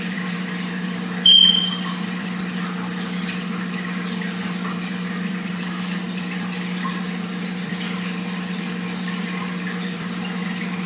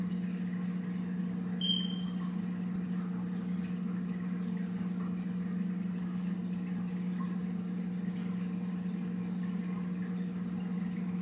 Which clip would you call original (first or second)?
second